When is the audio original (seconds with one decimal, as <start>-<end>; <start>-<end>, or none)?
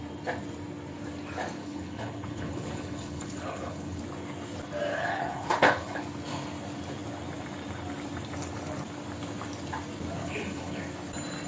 0.0-1.6; 4.0-4.9; 6.0-10.2; 10.8-11.5